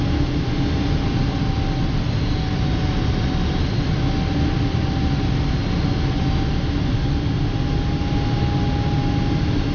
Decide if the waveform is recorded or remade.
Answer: recorded